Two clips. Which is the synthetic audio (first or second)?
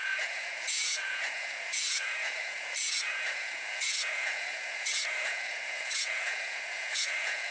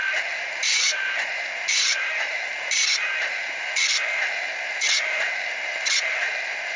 first